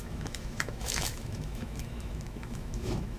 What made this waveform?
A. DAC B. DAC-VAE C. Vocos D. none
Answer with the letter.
B